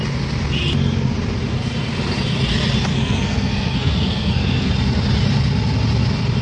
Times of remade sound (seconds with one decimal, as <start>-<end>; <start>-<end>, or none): 2.9-4.7